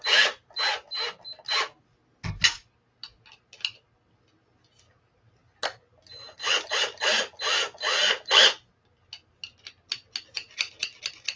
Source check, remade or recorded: recorded